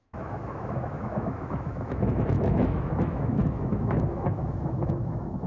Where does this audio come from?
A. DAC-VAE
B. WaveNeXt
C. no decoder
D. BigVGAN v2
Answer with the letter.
A